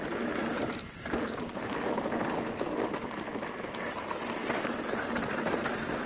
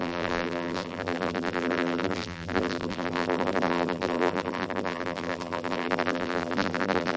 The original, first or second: first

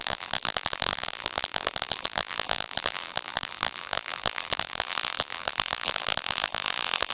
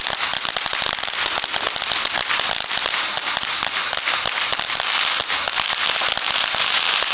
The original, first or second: second